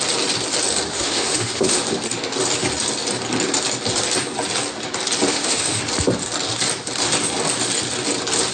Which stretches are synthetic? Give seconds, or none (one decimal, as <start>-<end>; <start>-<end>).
0.9-1.8; 5.3-5.8